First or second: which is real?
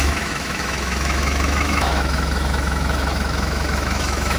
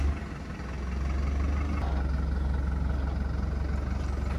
second